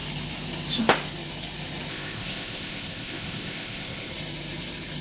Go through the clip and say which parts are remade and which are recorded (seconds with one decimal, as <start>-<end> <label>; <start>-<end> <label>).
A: 0.0-1.9 recorded; 1.9-4.1 remade; 4.1-5.0 recorded